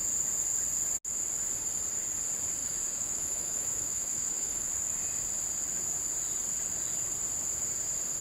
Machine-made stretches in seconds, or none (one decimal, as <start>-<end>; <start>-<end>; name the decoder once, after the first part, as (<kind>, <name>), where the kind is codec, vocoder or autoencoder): 2.6-4.7 (autoencoder, DAC-VAE)